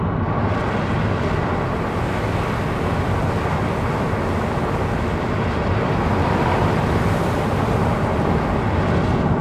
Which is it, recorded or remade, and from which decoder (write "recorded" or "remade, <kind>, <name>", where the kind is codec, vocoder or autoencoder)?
recorded